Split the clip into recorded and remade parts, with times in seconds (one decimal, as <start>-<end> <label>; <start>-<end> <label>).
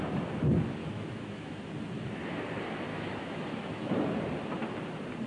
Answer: 0.0-0.8 recorded; 0.8-1.6 remade; 1.6-2.9 recorded; 2.9-3.9 remade; 3.9-5.3 recorded